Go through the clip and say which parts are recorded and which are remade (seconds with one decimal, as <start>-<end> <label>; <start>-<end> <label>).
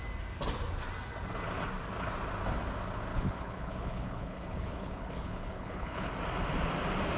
0.0-3.1 recorded; 3.1-6.1 remade; 6.1-7.2 recorded